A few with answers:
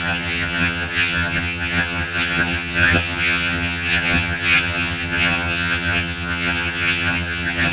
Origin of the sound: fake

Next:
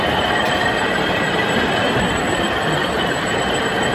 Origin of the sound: fake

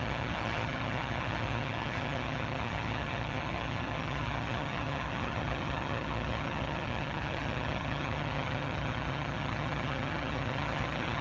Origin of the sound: fake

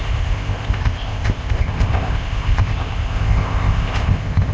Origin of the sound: fake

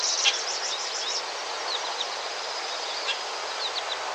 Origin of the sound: real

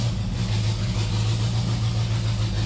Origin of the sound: real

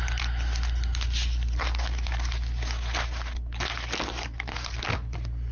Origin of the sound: real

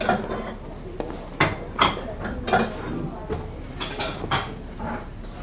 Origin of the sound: real